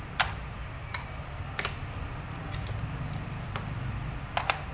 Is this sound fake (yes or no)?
no